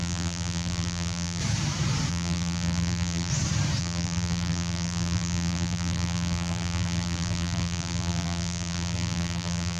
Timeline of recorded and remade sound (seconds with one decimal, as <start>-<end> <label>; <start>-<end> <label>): 0.0-1.4 remade; 1.4-2.1 recorded; 2.1-3.3 remade; 3.3-3.8 recorded; 3.8-9.8 remade